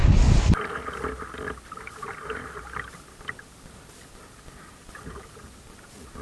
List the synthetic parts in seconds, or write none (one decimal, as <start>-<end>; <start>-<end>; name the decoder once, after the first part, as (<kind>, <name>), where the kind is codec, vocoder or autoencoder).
none